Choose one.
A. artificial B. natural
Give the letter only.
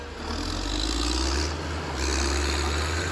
B